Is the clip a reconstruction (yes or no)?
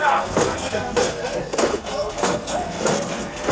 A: yes